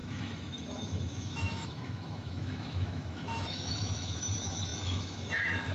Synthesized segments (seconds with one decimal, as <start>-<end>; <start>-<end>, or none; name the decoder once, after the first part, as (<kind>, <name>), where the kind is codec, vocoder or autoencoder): 0.0-5.7 (autoencoder, DAC-VAE)